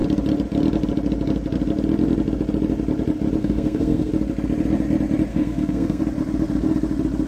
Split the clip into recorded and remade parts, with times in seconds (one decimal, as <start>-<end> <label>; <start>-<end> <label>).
0.0-3.4 recorded; 3.4-4.1 remade; 4.1-5.3 recorded; 5.3-6.0 remade; 6.0-7.3 recorded